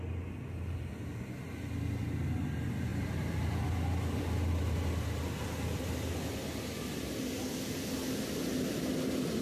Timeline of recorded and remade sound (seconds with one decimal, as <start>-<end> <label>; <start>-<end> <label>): 0.0-9.4 recorded